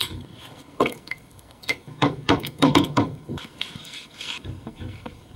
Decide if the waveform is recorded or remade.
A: remade